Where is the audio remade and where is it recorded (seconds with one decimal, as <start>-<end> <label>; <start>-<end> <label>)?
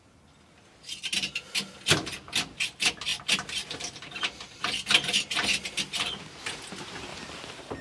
0.0-7.1 recorded; 7.1-7.8 remade